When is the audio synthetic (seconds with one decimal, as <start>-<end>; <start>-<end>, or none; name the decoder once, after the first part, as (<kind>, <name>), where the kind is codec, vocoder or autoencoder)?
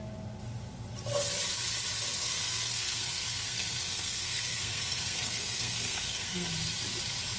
2.2-6.5 (codec, SNAC)